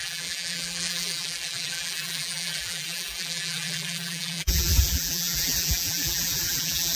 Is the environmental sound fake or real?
fake